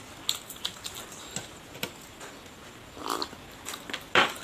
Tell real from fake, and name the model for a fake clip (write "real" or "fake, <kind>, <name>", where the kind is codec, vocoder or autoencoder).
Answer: real